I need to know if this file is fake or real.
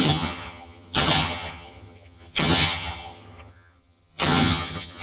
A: fake